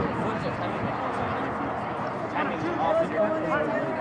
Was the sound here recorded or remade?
recorded